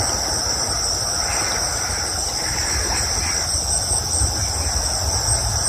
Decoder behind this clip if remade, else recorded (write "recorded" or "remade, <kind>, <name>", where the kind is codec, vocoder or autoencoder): recorded